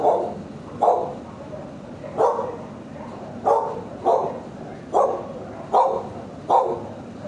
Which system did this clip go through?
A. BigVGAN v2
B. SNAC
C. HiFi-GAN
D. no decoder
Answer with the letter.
D